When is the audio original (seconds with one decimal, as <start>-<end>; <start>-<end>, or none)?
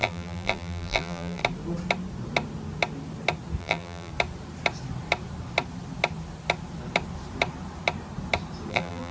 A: 1.4-3.6; 4.1-8.7